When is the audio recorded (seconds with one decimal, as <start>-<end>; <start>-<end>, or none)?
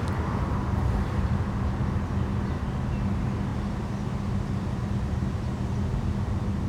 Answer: 0.0-0.7; 1.3-1.8; 2.3-3.5